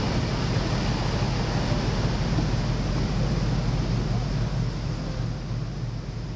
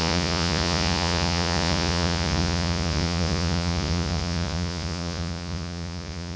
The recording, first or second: first